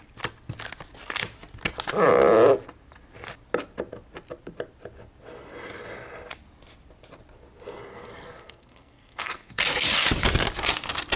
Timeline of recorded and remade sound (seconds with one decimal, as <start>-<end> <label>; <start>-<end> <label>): 0.0-7.9 recorded; 7.9-9.6 remade; 9.6-11.2 recorded